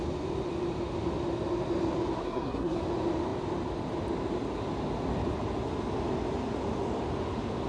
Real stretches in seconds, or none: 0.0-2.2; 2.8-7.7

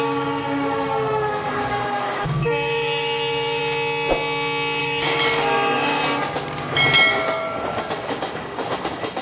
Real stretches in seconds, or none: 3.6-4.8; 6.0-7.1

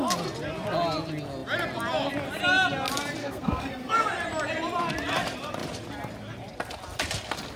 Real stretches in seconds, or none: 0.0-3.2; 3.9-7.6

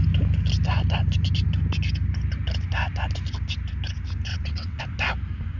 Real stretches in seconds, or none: 0.0-4.3; 4.8-5.6

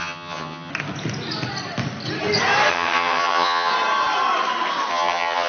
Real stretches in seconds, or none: 0.7-2.7; 3.7-4.9

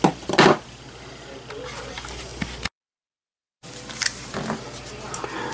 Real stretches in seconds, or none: 0.0-5.5

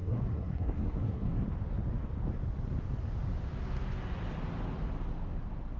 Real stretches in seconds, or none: 1.4-5.8